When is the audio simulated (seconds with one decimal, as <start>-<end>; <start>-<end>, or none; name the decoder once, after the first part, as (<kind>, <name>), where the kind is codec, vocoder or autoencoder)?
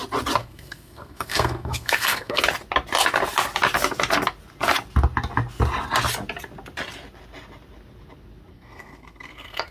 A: 0.4-2.4 (codec, SNAC); 8.5-9.7